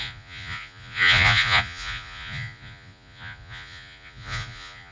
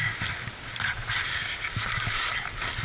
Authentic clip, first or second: second